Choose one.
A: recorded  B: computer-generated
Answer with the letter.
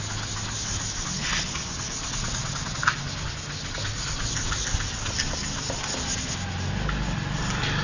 A